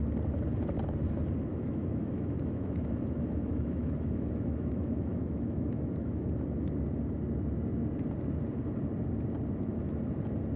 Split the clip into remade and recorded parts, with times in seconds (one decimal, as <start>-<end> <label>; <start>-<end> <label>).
0.0-1.5 recorded; 1.5-6.2 remade; 6.2-10.6 recorded